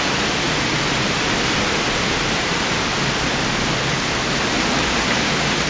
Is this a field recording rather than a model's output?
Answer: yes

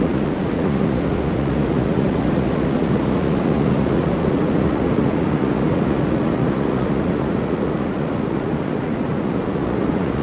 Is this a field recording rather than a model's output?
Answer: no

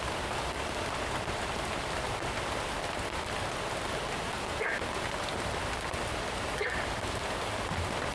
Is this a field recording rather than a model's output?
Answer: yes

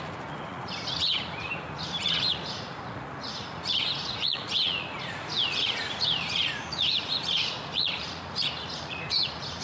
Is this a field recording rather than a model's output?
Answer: no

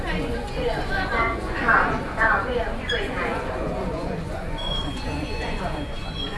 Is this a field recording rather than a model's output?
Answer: no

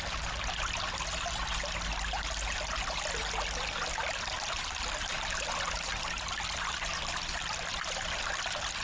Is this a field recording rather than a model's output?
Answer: yes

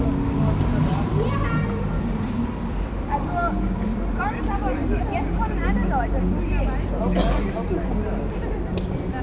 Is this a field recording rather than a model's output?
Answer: yes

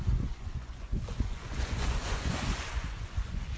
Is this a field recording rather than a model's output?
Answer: no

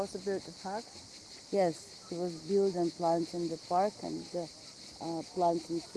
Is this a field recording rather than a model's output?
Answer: yes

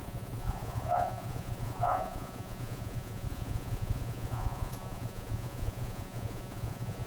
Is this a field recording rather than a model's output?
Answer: no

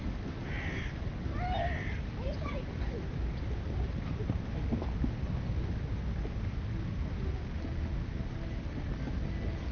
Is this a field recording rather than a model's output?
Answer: yes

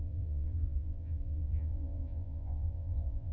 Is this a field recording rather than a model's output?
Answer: no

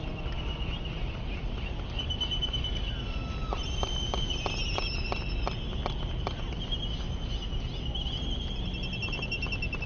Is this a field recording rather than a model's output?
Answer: yes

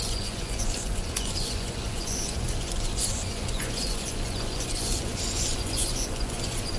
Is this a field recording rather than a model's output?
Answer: no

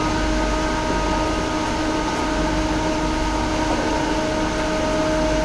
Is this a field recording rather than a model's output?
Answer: yes